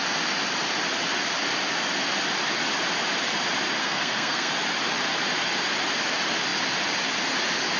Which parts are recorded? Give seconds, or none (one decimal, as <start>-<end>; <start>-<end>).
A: 0.0-3.8; 4.5-7.8